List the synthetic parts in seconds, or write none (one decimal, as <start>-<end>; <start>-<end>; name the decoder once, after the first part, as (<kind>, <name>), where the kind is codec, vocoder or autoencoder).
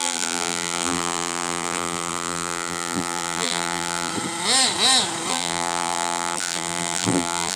0.0-4.1 (vocoder, BigVGAN v2); 5.3-7.6